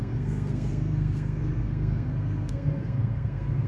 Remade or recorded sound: remade